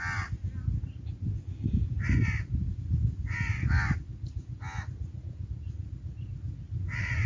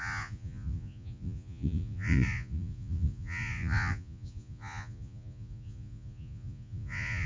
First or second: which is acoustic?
first